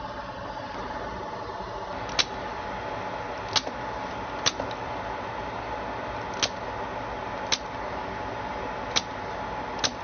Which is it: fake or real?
real